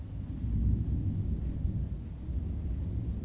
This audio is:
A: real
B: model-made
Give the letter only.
A